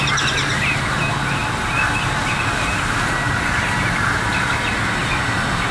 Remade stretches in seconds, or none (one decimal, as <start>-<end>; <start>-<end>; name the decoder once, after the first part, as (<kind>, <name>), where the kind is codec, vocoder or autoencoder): none